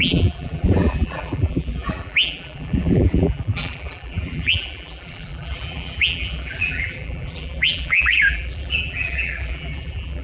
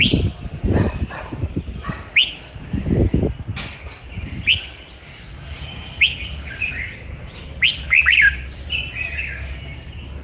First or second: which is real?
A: second